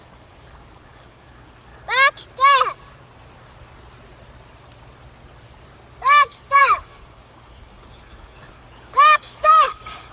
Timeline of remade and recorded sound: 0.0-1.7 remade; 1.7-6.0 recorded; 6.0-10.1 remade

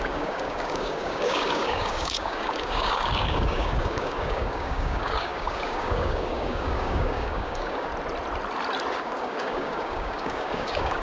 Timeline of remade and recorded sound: 0.0-7.9 remade; 7.9-8.9 recorded; 8.9-11.0 remade

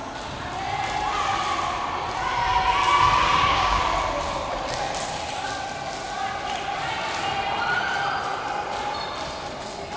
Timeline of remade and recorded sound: 0.0-3.3 recorded; 3.3-3.8 remade; 3.8-10.0 recorded